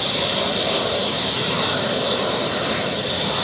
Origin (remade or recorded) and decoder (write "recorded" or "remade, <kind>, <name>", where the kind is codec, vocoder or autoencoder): recorded